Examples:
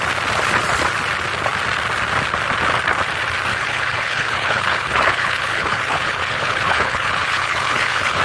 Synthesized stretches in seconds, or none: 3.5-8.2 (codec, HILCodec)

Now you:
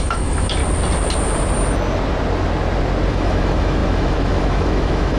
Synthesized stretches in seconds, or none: 0.0-0.6 (autoencoder, DAC-VAE); 3.1-5.2

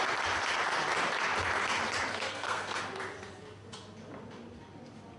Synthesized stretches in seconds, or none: 2.1-2.8 (codec, SNAC)

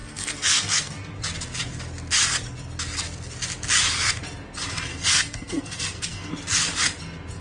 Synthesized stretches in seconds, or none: 0.0-0.9 (codec, SNAC); 4.9-6.3

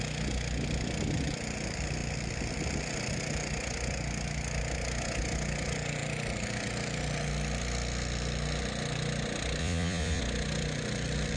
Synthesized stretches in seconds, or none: 9.6-10.2 (vocoder, Vocos)

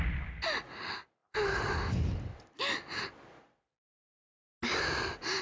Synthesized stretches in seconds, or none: none